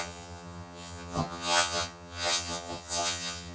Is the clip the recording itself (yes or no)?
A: no